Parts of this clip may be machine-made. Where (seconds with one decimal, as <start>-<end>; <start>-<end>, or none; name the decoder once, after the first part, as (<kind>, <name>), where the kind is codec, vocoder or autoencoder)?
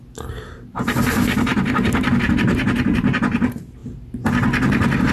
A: 1.5-2.3 (vocoder, BigVGAN v2)